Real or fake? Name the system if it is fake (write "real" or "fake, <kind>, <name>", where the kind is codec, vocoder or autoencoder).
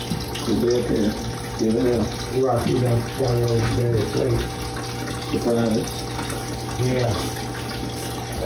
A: real